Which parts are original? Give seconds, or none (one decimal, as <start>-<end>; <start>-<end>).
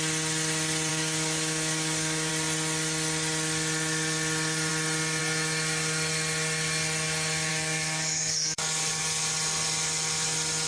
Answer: 0.0-0.9; 2.3-7.5; 9.2-10.7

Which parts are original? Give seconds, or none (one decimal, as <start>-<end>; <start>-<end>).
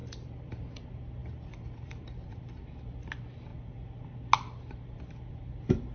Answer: 0.6-1.2; 2.4-5.9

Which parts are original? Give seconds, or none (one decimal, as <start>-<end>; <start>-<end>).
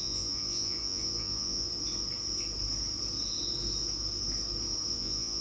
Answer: 1.7-4.9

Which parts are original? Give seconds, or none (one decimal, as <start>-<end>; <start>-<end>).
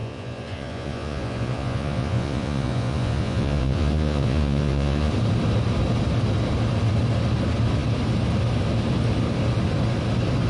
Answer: 5.1-10.5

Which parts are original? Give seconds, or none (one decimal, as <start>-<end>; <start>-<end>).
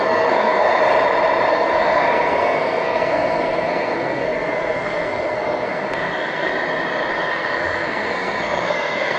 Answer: 0.8-1.5; 6.5-7.1